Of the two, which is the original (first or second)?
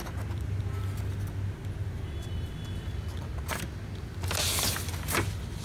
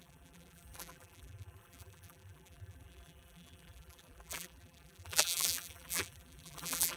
first